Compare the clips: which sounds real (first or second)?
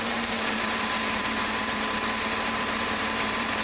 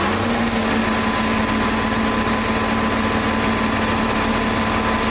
second